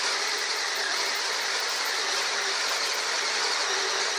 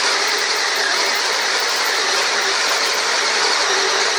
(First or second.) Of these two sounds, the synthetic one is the second